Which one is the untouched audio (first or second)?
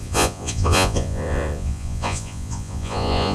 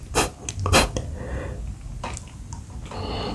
second